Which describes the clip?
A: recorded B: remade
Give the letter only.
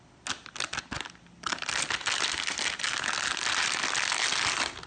A